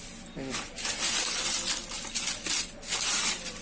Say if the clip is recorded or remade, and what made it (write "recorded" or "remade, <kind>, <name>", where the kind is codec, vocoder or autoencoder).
recorded